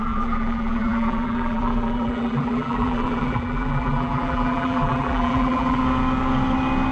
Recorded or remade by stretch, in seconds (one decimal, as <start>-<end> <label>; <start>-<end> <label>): 0.0-5.8 remade; 5.8-6.9 recorded